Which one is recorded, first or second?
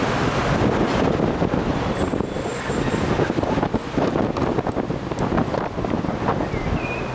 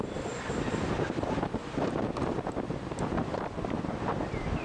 first